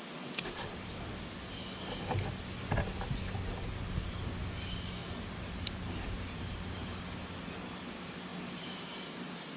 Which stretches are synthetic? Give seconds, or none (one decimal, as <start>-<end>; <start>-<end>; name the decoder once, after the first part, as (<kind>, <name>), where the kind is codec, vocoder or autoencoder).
5.0-7.0 (vocoder, BigVGAN v2); 8.3-9.6